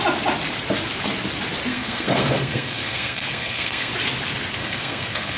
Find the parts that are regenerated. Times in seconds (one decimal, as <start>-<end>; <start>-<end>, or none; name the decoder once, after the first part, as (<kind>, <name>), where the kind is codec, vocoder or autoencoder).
1.7-3.9 (codec, SNAC); 4.6-5.4